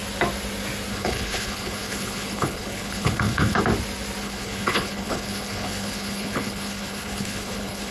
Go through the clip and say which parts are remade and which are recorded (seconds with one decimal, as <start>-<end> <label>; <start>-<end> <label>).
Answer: 0.0-0.9 recorded; 0.9-3.6 remade; 3.6-4.2 recorded; 4.2-7.9 remade